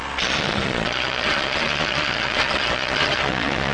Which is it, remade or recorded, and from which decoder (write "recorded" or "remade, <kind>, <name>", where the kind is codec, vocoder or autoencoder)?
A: remade, vocoder, Vocos